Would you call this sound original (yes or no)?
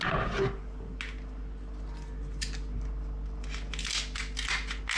yes